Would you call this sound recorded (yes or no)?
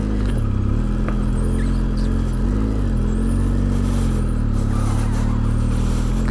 yes